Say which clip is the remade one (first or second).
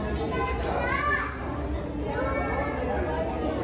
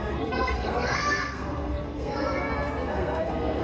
second